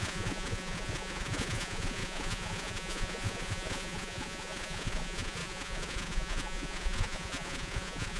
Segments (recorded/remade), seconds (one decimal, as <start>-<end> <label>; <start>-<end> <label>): 0.0-8.2 remade